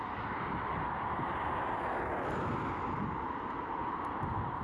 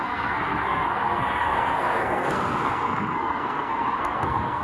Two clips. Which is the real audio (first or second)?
first